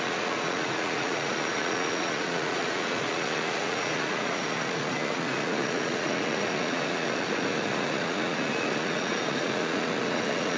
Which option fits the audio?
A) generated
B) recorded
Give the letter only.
A